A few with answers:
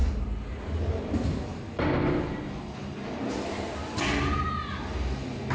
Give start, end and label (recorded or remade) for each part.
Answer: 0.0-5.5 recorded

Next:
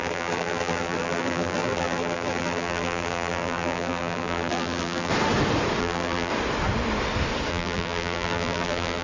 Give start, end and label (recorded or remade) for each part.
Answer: 0.0-5.1 remade; 5.1-5.8 recorded; 5.8-6.3 remade; 6.3-7.5 recorded; 7.5-9.0 remade

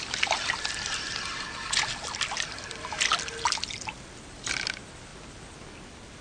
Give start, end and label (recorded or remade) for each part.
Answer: 0.0-6.2 recorded

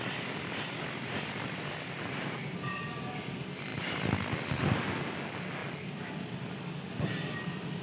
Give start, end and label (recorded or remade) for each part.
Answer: 0.0-7.8 recorded

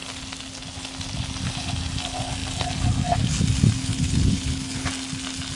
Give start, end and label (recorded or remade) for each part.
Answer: 0.0-3.8 recorded; 3.8-4.9 remade; 4.9-5.6 recorded

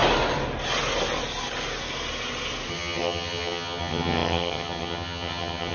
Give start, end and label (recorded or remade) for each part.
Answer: 0.0-2.7 recorded; 2.7-5.7 remade

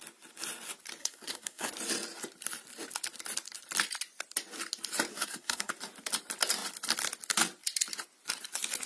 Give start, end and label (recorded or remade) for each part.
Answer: 0.0-1.0 recorded; 1.0-1.7 remade; 1.7-5.1 recorded; 5.1-5.7 remade; 5.7-8.9 recorded